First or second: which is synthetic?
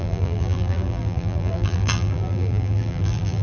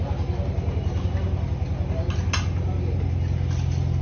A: first